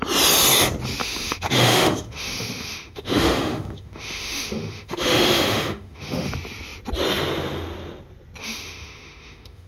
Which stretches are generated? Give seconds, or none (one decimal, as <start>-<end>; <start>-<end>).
1.0-6.3; 8.4-9.7